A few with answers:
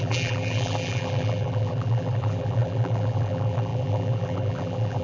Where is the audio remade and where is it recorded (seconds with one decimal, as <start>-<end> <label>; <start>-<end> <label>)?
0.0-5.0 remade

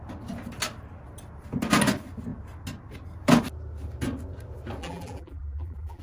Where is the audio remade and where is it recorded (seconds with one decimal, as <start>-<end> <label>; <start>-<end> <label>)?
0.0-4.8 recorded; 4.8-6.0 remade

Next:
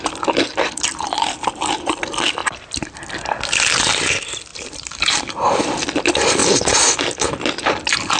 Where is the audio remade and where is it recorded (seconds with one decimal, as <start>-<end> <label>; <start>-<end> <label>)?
0.0-4.5 recorded; 4.5-5.3 remade; 5.3-8.2 recorded